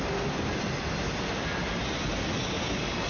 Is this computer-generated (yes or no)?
no